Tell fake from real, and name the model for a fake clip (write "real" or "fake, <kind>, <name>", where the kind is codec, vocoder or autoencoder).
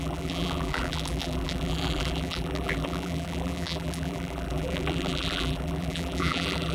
fake, vocoder, BigVGAN v2